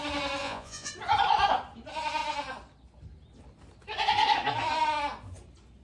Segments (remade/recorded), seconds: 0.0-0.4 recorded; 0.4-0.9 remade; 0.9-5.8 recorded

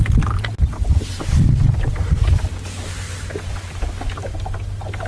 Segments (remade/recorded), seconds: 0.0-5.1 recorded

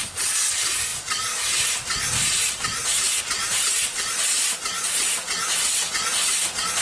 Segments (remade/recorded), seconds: 0.0-6.8 recorded

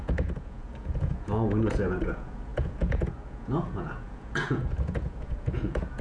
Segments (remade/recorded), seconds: 0.0-6.0 remade

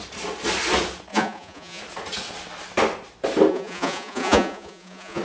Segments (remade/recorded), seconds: 0.0-1.1 recorded; 1.1-1.8 remade; 1.8-3.5 recorded; 3.5-5.2 remade